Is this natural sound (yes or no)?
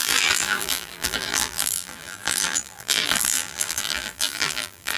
no